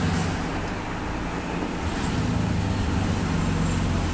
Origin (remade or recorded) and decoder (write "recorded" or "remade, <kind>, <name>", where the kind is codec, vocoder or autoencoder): recorded